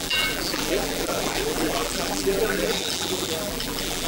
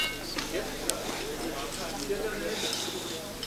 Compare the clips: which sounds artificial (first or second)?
first